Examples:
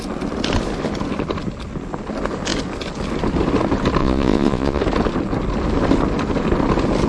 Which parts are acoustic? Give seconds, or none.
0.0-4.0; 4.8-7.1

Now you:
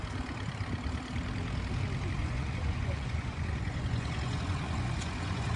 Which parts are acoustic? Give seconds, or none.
0.0-2.2

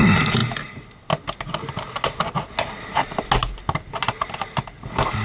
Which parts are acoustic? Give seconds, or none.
0.0-5.2

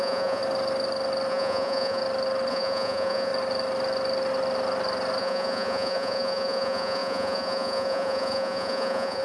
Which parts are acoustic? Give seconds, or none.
0.4-1.3; 2.0-2.5; 3.3-5.2

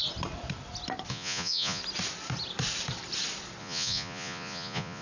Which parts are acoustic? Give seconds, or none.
0.0-1.1; 1.8-3.6

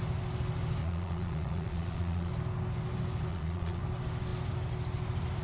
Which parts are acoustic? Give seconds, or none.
0.0-0.8; 2.3-3.3; 3.8-5.4

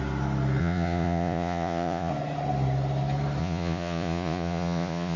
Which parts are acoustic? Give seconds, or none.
0.0-0.6; 2.1-3.4

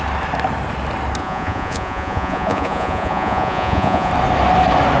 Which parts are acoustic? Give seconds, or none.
0.0-1.2; 4.1-5.0